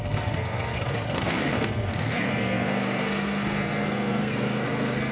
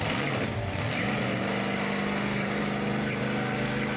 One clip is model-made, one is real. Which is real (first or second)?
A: second